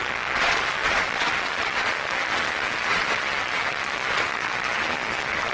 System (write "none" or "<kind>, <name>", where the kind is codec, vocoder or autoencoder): vocoder, Vocos